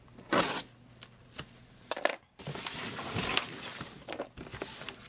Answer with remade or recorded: recorded